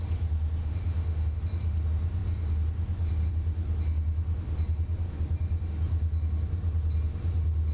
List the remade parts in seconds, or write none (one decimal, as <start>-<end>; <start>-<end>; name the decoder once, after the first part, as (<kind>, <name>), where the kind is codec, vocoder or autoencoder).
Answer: 0.6-1.4 (autoencoder, DAC-VAE)

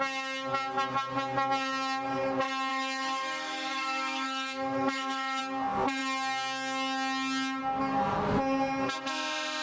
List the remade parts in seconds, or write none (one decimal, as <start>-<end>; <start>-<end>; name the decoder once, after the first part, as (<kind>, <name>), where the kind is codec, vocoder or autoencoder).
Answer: 2.7-5.4 (autoencoder, DAC-VAE)

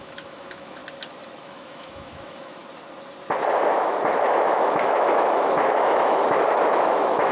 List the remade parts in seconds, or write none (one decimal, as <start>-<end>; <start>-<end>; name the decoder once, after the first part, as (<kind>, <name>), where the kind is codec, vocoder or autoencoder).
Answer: 0.0-0.8 (autoencoder, DAC-VAE); 1.4-2.6; 3.7-7.3

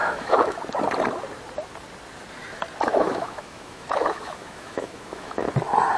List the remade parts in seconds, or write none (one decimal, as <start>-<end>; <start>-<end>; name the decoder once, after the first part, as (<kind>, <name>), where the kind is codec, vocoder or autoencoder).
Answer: 0.0-0.6 (autoencoder, DAC-VAE); 2.9-5.5